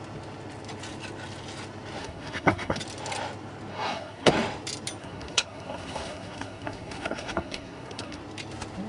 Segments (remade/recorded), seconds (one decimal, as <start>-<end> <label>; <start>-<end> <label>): 0.0-2.0 recorded; 2.0-2.8 remade; 2.8-3.7 recorded; 3.7-4.3 remade; 4.3-5.0 recorded; 5.0-8.2 remade; 8.2-8.9 recorded